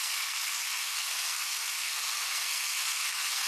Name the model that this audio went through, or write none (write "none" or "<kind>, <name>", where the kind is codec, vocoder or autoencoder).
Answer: codec, SNAC